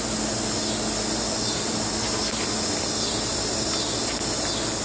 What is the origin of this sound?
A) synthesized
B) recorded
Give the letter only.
B